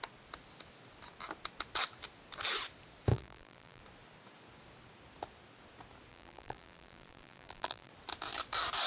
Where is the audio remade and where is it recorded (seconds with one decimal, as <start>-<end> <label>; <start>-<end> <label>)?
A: 0.0-3.1 recorded; 3.1-3.8 remade; 3.8-6.1 recorded; 6.1-7.9 remade; 7.9-8.9 recorded